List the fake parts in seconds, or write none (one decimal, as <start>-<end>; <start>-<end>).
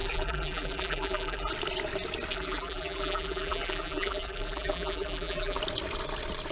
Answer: 0.0-1.5; 2.3-5.6